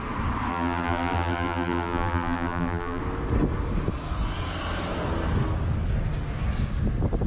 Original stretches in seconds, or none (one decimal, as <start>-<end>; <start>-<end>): 0.0-0.5; 3.0-7.3